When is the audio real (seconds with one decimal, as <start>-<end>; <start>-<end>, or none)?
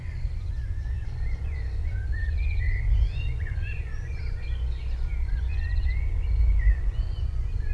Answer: none